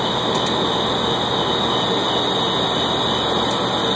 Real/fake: real